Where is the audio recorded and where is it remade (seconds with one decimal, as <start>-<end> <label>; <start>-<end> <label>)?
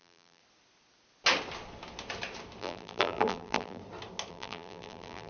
0.0-0.4 remade; 0.4-2.6 recorded; 2.6-3.8 remade; 3.8-4.3 recorded; 4.3-5.3 remade